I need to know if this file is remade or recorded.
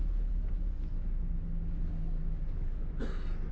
recorded